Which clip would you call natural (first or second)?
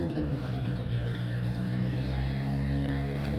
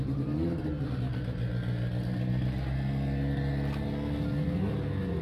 second